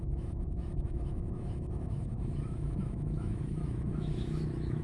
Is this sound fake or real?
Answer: fake